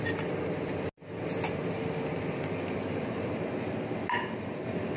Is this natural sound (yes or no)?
yes